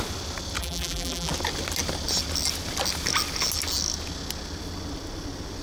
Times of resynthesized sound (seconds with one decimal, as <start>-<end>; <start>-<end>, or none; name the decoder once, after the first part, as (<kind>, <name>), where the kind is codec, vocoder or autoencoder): 0.6-1.3 (vocoder, BigVGAN v2)